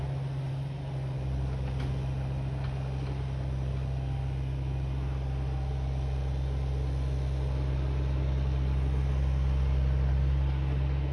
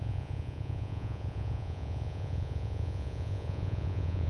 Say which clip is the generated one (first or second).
second